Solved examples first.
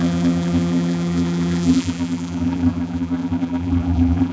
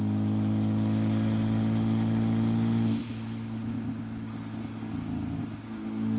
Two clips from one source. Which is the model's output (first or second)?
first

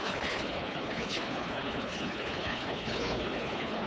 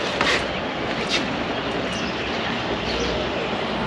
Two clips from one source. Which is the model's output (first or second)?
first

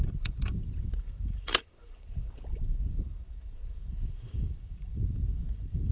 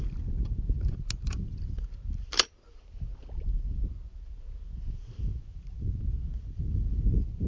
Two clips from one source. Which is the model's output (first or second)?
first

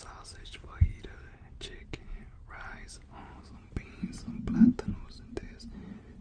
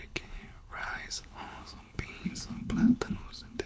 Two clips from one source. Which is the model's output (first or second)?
second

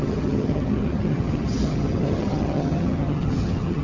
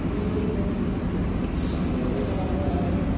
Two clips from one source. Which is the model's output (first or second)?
first